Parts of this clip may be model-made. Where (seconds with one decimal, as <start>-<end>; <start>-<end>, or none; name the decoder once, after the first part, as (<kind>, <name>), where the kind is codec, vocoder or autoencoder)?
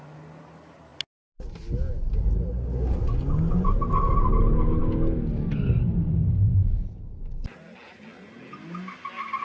none